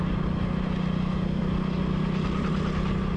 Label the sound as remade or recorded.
recorded